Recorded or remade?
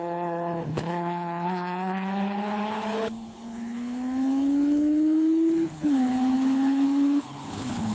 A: remade